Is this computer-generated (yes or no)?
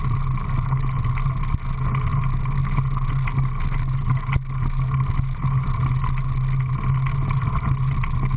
no